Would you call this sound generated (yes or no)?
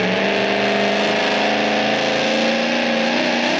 no